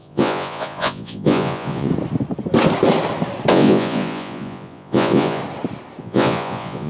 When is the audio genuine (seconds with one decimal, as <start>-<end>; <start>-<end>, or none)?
1.9-3.5; 5.4-6.0